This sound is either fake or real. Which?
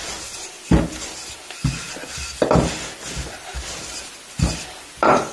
real